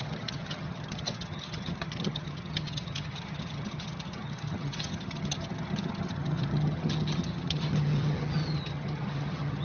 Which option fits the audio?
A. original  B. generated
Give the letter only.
B